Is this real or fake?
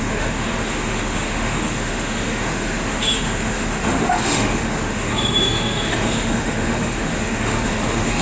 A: fake